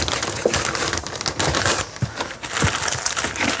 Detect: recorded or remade recorded